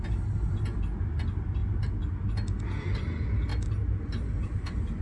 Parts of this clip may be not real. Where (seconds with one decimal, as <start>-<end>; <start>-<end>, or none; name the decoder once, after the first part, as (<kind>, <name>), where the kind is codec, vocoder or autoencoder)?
none